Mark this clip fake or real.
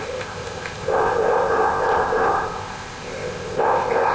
fake